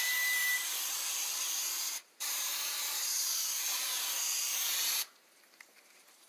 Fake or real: fake